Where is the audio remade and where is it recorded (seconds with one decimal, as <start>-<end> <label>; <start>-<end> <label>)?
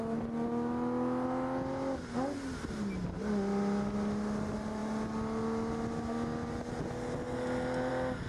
0.0-8.3 recorded